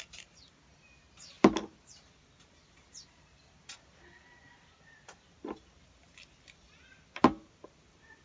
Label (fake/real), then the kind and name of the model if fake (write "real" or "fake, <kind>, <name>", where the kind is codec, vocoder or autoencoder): real